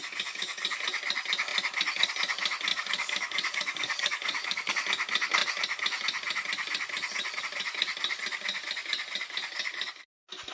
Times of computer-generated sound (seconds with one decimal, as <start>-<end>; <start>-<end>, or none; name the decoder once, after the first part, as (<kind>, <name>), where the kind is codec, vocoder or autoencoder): 2.7-4.7 (codec, DAC)